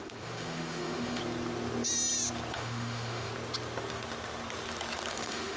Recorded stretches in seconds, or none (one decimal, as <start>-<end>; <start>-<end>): 1.2-2.5; 3.3-5.1